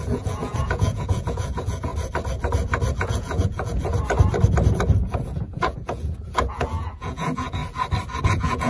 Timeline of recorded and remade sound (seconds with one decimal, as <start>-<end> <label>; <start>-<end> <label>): 0.0-1.9 remade; 1.9-3.0 recorded; 3.0-3.9 remade; 3.9-5.1 recorded; 5.1-7.6 remade; 7.6-8.2 recorded; 8.2-8.7 remade